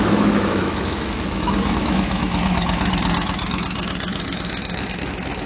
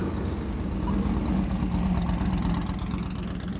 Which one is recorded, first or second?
second